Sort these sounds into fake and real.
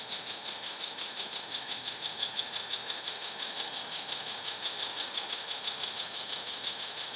fake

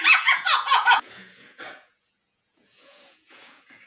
fake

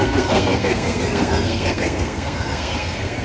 fake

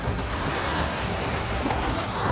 fake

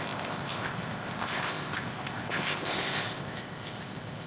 fake